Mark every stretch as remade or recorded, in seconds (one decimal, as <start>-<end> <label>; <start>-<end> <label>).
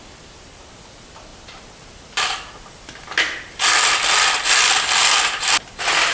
0.0-6.1 recorded